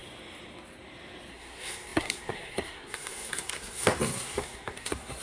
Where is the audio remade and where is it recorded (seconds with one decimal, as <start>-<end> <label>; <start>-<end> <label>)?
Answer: 0.0-1.3 recorded; 1.3-5.2 remade